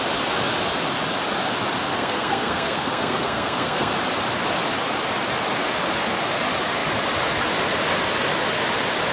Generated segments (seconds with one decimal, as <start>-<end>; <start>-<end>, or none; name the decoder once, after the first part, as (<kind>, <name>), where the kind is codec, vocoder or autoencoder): 1.9-3.9 (codec, SNAC)